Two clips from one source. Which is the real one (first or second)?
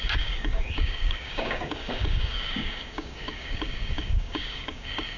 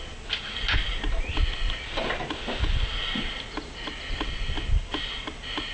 second